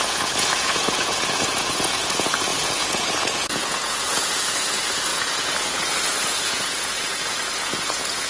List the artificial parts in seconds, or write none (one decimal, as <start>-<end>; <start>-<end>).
0.0-8.3